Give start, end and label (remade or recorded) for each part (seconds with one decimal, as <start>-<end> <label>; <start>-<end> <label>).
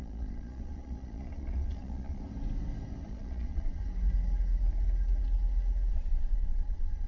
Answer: 0.0-2.2 remade; 2.2-3.1 recorded; 3.1-3.8 remade; 3.8-5.9 recorded; 5.9-7.1 remade